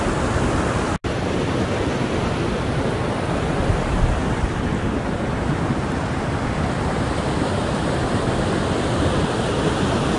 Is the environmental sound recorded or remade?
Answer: recorded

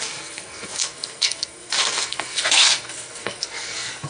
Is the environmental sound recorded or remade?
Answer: remade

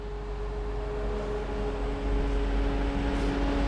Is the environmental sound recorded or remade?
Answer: recorded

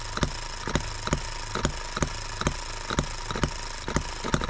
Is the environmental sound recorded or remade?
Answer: recorded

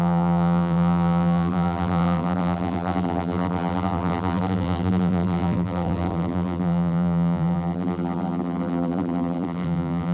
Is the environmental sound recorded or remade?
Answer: remade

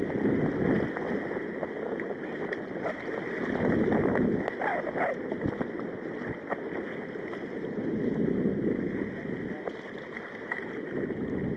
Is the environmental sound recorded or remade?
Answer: recorded